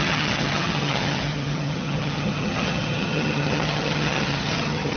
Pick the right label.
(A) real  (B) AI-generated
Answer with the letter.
B